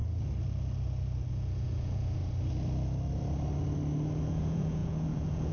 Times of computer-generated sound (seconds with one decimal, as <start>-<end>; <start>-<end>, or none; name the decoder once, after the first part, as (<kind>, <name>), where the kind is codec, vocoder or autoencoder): 1.3-2.2 (vocoder, Vocos); 4.2-5.5